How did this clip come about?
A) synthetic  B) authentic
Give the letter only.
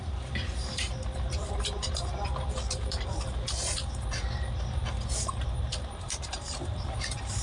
A